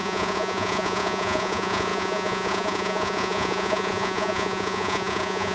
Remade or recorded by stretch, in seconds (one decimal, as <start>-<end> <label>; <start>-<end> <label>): 0.0-5.5 remade